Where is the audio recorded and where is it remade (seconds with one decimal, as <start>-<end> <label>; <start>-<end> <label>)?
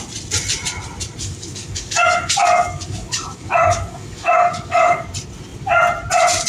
0.0-1.2 recorded; 1.2-5.1 remade; 5.1-6.5 recorded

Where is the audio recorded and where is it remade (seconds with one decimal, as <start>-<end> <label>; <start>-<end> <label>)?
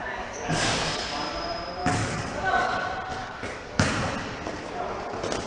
0.0-1.1 remade; 1.1-1.8 recorded; 1.8-2.8 remade; 2.8-3.2 recorded; 3.2-3.9 remade; 3.9-5.5 recorded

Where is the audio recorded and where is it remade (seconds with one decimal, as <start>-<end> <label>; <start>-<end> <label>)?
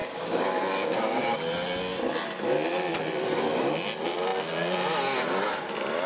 0.0-1.4 remade; 1.4-6.1 recorded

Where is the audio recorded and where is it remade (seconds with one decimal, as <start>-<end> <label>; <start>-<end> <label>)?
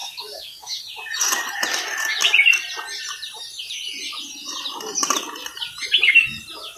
0.0-0.8 remade; 0.8-6.8 recorded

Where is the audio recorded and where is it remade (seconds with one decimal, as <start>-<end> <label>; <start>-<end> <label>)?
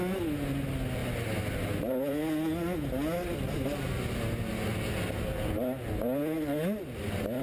0.0-7.4 recorded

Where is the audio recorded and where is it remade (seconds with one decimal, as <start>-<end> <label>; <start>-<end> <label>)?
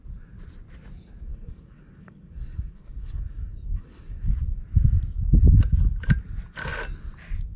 0.0-1.3 recorded; 1.3-4.3 remade; 4.3-7.6 recorded